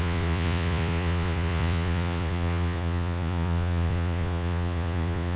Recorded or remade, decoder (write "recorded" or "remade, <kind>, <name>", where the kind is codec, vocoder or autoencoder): remade, vocoder, Vocos